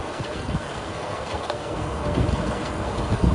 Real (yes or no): no